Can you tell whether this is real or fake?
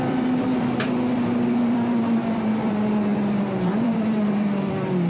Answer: fake